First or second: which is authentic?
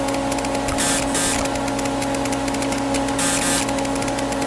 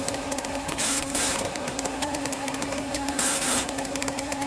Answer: first